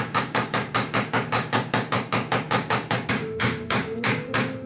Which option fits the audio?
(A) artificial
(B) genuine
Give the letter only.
A